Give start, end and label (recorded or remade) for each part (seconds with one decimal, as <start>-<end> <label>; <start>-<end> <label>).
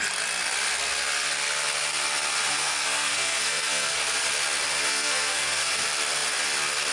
0.0-2.5 recorded; 2.5-4.0 remade; 4.0-4.9 recorded; 4.9-5.7 remade; 5.7-6.9 recorded